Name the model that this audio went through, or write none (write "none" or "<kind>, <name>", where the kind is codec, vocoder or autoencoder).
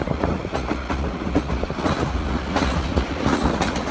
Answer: vocoder, Vocos